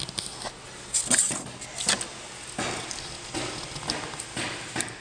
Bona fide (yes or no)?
yes